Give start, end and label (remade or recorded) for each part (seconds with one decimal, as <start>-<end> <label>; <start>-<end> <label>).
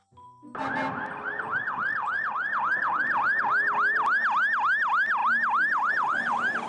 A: 0.0-2.8 recorded; 2.8-3.4 remade; 3.4-6.7 recorded